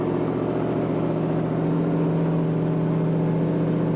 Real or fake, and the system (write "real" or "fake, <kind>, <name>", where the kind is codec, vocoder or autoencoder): real